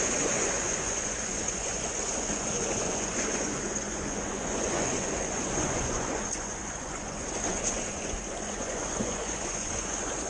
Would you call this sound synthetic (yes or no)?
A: yes